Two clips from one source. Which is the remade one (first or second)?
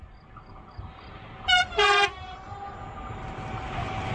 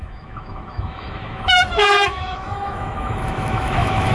second